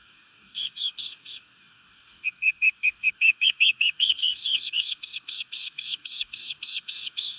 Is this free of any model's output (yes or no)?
no